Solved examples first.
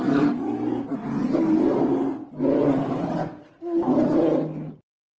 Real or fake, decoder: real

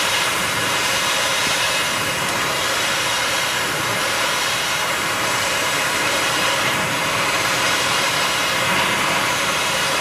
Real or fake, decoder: fake, vocoder, BigVGAN v2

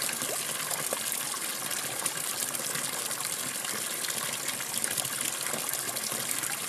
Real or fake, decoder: real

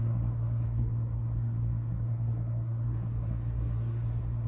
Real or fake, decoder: fake, codec, SNAC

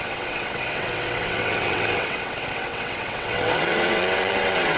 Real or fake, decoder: fake, vocoder, WaveNeXt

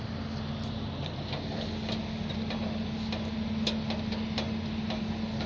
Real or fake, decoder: real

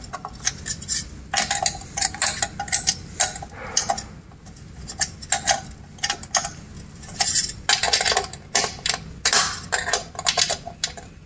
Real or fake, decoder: real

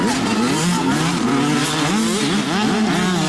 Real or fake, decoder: real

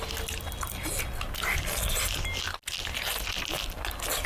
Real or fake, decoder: real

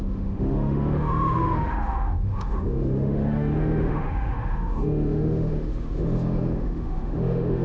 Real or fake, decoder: fake, autoencoder, DAC-VAE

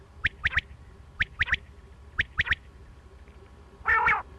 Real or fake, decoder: real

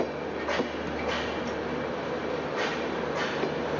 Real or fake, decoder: real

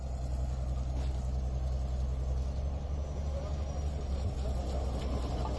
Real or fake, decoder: real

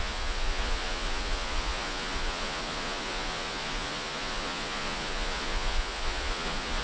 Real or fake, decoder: fake, vocoder, Vocos